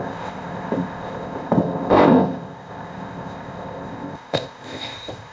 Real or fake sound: fake